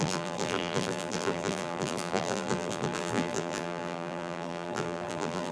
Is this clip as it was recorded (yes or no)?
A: no